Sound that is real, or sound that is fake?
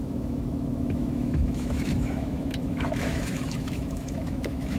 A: fake